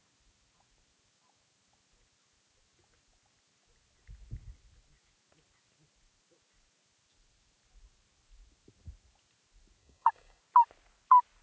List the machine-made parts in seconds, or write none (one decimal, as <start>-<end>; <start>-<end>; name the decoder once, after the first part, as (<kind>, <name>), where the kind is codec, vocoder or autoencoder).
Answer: 9.8-10.4 (codec, DAC)